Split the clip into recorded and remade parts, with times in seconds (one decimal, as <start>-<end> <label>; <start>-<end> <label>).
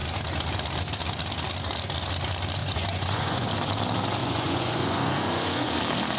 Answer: 0.0-2.6 recorded; 2.6-3.5 remade; 3.5-4.2 recorded; 4.2-5.8 remade; 5.8-6.2 recorded